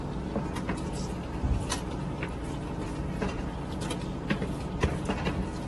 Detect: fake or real real